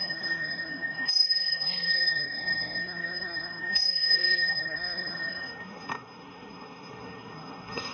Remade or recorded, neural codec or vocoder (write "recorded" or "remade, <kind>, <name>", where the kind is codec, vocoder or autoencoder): remade, codec, SNAC